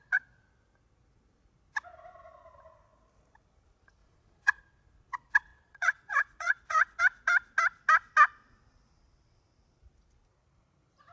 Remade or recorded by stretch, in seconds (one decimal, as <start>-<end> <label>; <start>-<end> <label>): 0.0-4.0 recorded; 4.0-4.6 remade; 4.6-5.5 recorded; 5.5-7.0 remade; 7.0-11.1 recorded